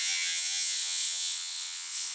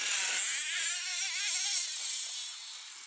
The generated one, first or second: first